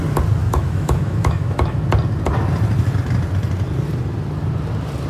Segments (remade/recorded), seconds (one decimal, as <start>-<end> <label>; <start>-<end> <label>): 0.0-0.4 recorded; 0.4-1.8 remade; 1.8-5.1 recorded